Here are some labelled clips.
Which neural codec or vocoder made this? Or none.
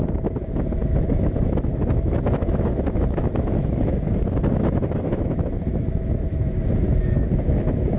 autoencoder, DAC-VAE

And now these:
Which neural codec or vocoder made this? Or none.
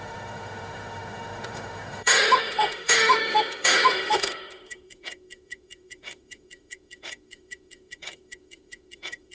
autoencoder, DAC-VAE